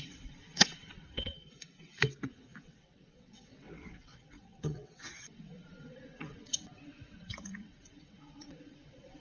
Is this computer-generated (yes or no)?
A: yes